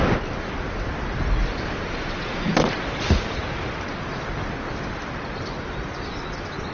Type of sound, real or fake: real